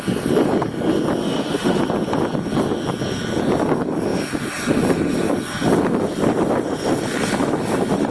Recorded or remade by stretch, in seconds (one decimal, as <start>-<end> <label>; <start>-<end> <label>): 0.0-1.2 recorded; 1.2-1.8 remade; 1.8-8.1 recorded